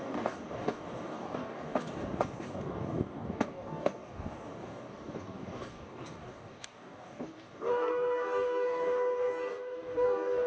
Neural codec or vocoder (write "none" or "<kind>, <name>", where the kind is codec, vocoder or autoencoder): codec, DAC